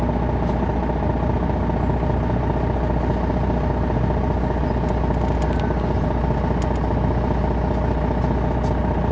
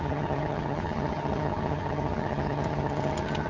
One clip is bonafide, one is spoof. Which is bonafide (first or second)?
first